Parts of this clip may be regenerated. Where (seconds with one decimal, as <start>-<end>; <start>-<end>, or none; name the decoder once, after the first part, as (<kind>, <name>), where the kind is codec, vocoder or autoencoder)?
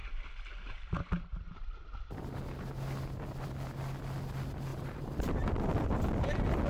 4.7-5.5 (vocoder, BigVGAN v2)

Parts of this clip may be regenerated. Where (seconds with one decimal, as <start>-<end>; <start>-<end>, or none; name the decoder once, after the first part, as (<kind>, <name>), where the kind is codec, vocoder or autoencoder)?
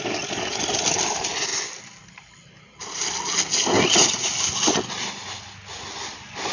none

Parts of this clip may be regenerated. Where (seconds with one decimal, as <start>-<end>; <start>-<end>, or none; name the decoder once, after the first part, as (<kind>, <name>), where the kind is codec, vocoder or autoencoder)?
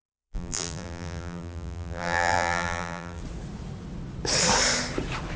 0.0-3.2 (vocoder, BigVGAN v2)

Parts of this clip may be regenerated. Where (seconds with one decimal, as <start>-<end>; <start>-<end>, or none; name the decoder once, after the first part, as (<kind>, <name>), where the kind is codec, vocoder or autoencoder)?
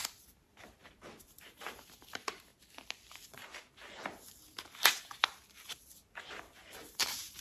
0.0-2.5 (vocoder, BigVGAN v2); 6.2-7.4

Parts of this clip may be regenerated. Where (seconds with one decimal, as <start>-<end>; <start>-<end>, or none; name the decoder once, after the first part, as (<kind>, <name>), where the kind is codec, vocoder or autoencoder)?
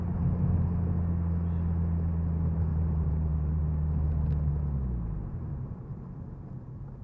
2.7-3.6 (vocoder, BigVGAN v2)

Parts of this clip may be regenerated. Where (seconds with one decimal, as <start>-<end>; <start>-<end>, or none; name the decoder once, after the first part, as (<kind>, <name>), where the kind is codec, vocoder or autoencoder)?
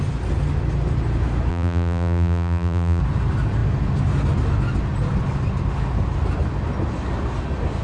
1.5-3.0 (vocoder, BigVGAN v2)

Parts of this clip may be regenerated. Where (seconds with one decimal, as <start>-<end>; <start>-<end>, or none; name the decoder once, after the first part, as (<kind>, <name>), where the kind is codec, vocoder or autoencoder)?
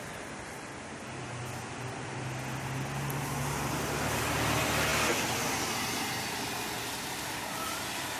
none